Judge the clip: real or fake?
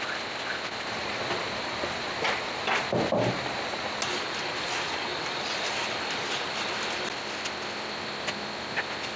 real